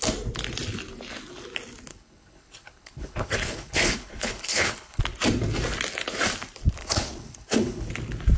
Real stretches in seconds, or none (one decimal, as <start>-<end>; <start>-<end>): 0.0-1.9; 5.0-6.8; 7.9-8.4